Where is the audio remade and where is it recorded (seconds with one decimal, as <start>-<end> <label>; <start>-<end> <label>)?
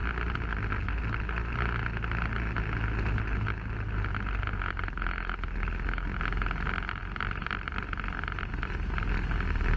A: 0.0-9.8 recorded